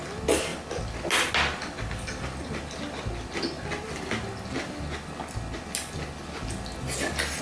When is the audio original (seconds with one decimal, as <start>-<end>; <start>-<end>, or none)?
0.0-7.4